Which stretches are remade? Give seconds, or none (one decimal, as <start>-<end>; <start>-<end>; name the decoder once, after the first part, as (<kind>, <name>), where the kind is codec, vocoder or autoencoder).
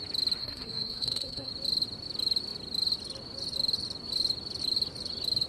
0.4-1.5 (codec, SNAC)